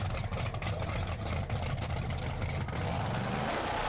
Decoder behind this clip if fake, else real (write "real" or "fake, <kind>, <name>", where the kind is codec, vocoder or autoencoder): real